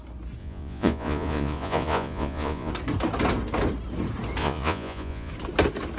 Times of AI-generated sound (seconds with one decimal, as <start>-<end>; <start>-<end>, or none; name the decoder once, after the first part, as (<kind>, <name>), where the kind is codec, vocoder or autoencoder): 0.4-2.7 (vocoder, Vocos); 4.4-5.3

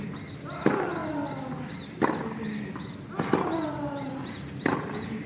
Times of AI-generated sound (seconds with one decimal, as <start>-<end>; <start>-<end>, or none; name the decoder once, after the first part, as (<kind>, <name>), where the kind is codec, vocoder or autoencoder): none

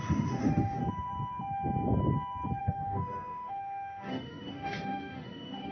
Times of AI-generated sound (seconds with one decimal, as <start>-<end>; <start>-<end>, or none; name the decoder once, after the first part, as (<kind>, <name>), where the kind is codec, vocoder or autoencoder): 0.0-0.8 (autoencoder, DAC-VAE); 2.6-5.7

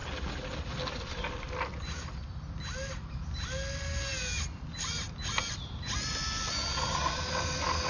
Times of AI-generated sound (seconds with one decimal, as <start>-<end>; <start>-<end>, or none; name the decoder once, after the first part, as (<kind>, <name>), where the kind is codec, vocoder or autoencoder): none

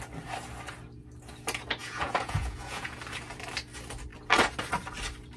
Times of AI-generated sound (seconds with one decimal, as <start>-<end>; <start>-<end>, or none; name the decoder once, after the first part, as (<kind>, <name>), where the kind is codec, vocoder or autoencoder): 1.8-3.0 (vocoder, Vocos)

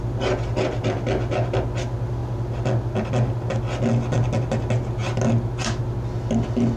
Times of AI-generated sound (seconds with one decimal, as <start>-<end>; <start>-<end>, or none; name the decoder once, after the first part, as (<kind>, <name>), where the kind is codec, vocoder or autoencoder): none